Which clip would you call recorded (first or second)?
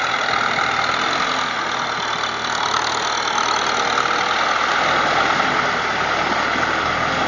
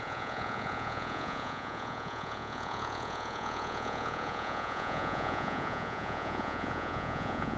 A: first